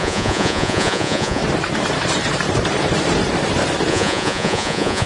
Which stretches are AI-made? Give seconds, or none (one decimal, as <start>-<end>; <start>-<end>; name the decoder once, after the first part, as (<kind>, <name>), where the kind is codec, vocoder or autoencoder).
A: 0.0-1.4 (vocoder, Vocos); 3.9-5.1